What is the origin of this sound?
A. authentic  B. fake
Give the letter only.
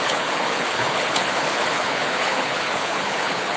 B